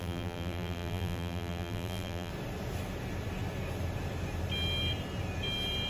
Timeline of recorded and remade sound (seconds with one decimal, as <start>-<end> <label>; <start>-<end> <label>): 0.0-2.3 remade; 2.3-5.9 recorded